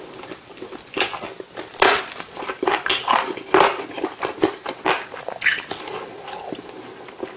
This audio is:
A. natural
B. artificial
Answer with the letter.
A